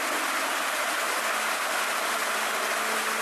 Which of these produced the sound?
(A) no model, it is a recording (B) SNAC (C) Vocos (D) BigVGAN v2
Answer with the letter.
A